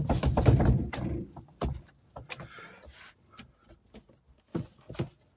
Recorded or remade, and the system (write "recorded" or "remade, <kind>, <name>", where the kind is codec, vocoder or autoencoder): recorded